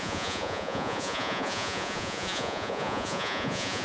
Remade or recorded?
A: remade